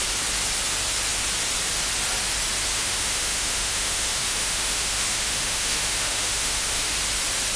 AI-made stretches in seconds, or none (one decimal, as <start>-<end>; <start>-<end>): 2.7-7.0